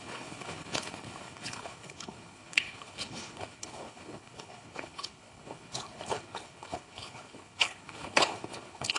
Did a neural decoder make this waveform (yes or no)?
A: yes